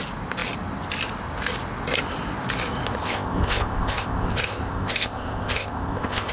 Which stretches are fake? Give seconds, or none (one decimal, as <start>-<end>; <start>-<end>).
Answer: 3.0-6.3